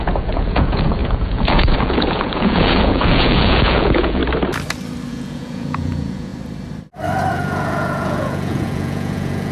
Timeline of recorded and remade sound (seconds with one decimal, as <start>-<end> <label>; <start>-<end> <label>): 0.0-4.2 remade; 4.2-5.1 recorded; 5.1-6.3 remade; 6.3-7.3 recorded; 7.3-9.5 remade